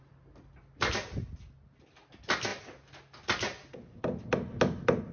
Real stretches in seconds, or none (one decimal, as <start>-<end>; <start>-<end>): 0.0-5.1